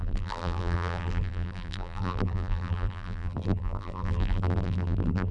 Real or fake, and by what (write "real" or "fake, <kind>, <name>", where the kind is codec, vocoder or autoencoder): fake, vocoder, BigVGAN v2